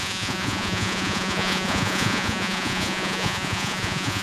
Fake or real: fake